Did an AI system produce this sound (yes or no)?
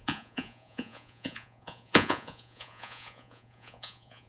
yes